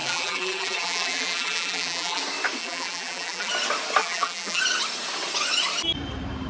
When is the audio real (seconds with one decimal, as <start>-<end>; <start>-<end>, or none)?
2.2-2.6; 3.5-4.0; 4.6-6.5